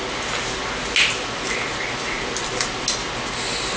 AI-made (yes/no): no